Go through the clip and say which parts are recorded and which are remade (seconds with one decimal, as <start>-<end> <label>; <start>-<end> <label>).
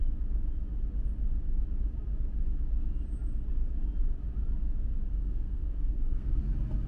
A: 0.0-5.1 recorded; 5.1-6.4 remade; 6.4-6.9 recorded